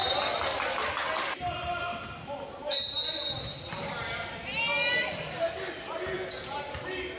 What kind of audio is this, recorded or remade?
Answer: recorded